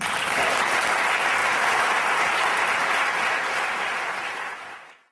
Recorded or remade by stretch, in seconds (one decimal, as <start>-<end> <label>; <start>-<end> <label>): 0.0-5.1 recorded